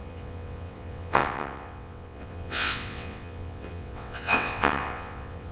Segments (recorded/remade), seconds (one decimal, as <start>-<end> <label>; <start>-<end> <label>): 0.0-5.5 remade